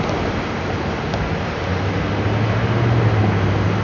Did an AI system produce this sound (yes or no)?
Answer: no